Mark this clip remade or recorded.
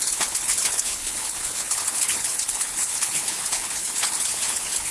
remade